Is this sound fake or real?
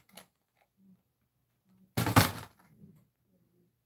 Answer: real